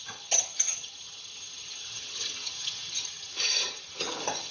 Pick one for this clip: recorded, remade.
remade